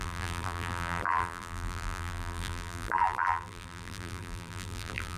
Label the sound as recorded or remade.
remade